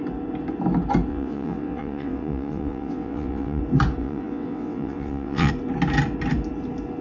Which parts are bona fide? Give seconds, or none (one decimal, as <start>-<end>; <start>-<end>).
0.0-1.1; 3.6-4.0; 5.5-7.0